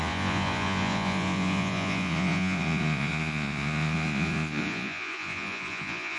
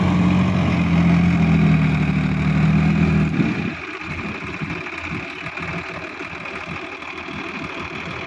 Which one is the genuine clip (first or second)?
second